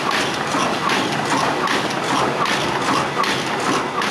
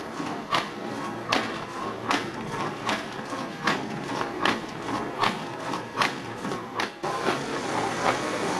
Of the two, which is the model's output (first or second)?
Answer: second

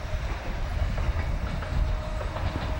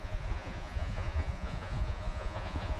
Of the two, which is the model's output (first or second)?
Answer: second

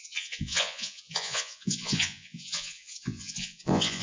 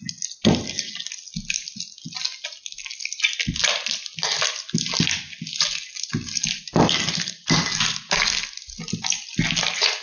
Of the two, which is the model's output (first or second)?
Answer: first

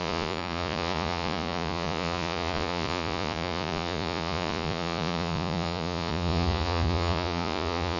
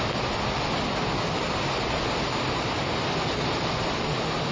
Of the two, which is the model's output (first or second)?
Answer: first